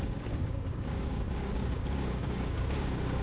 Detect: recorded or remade remade